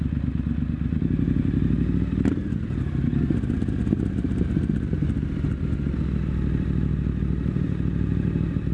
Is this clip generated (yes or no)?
no